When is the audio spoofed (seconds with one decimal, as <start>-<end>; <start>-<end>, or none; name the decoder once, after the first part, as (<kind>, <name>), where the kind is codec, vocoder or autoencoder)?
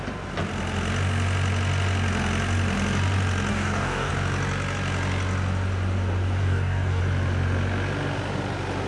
3.5-4.1 (codec, DAC); 6.4-7.0